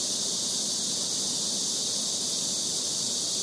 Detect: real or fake real